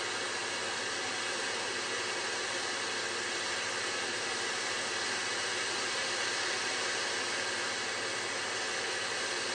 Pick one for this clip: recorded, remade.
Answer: recorded